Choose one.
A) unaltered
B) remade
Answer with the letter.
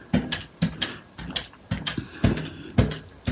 A